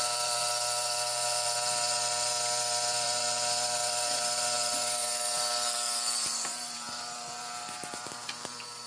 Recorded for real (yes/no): no